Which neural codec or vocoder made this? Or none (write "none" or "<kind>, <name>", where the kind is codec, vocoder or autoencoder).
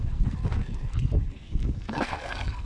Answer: codec, SNAC